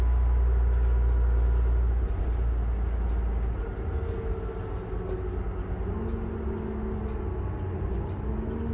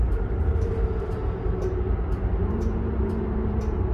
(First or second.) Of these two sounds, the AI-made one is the second